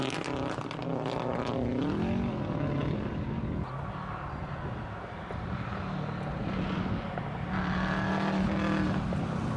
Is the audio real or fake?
real